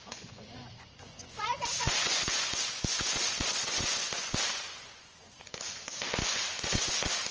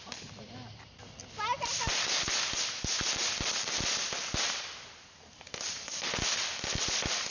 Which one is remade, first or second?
first